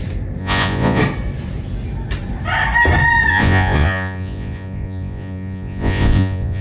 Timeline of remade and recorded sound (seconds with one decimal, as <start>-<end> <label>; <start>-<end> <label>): 0.0-0.4 recorded; 0.4-1.0 remade; 1.0-3.3 recorded; 3.3-6.6 remade